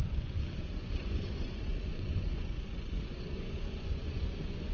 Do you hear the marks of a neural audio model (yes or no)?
yes